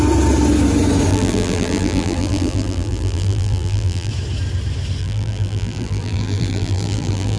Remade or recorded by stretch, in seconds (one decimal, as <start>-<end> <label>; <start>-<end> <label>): 0.0-1.1 recorded; 1.1-4.1 remade; 4.1-5.0 recorded; 5.0-7.4 remade